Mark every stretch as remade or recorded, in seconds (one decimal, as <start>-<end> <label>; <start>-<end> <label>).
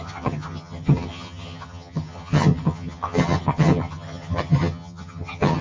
0.0-5.6 remade